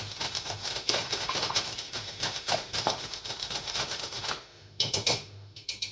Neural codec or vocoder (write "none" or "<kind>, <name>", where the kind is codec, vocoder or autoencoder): autoencoder, DAC-VAE